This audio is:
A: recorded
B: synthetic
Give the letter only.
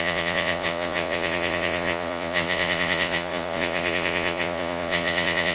B